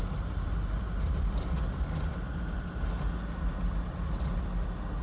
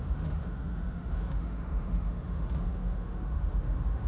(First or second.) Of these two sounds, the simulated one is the second